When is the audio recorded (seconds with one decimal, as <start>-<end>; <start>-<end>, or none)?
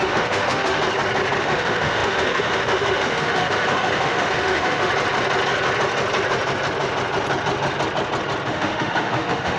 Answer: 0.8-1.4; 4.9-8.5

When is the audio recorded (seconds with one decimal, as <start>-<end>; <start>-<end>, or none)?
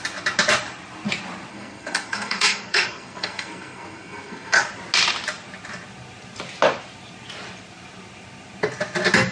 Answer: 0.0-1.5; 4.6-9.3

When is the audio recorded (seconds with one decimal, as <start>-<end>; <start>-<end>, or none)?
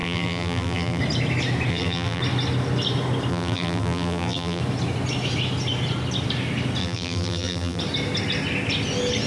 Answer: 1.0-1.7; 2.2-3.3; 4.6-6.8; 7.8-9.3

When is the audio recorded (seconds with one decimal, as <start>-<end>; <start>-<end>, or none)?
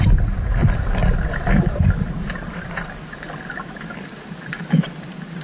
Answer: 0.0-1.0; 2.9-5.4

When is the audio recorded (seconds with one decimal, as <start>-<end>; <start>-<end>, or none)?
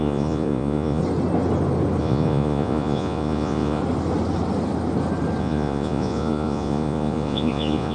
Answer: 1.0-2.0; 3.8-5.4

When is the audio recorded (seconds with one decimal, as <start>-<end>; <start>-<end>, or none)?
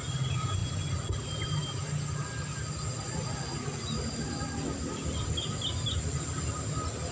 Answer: 0.0-7.1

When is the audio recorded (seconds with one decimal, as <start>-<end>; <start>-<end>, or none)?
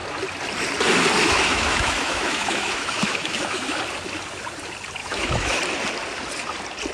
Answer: 0.0-1.5; 3.8-5.0; 5.6-6.9